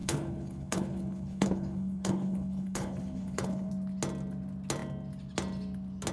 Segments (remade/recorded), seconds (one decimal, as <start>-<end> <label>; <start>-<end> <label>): 0.0-3.7 remade; 3.7-6.1 recorded